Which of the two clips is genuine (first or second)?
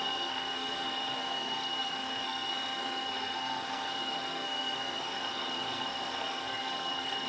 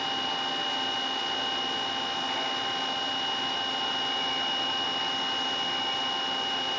second